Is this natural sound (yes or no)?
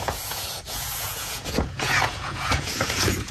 no